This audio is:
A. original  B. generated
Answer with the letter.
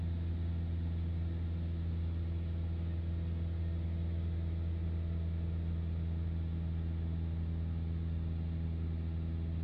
A